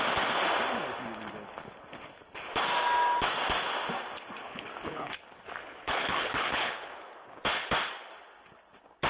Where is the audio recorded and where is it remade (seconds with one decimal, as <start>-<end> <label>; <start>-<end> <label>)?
0.0-4.4 recorded; 4.4-5.1 remade; 5.1-5.6 recorded; 5.6-6.9 remade; 6.9-9.1 recorded